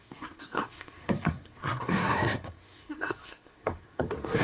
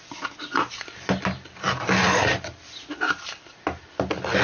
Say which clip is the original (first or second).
second